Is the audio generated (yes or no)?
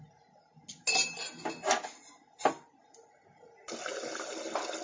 no